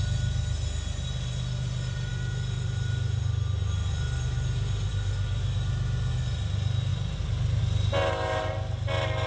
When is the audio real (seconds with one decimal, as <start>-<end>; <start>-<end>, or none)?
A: 0.0-9.3